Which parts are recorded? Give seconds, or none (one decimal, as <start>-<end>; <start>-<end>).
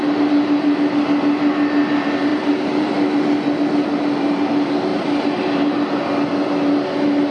0.0-2.3; 2.9-4.9; 5.4-7.3